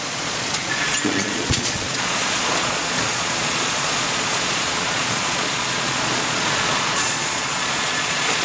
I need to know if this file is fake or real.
fake